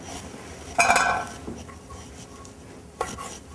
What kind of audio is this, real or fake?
real